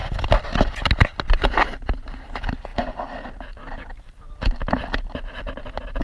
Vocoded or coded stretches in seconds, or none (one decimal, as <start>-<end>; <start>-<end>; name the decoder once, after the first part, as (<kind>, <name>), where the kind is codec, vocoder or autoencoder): none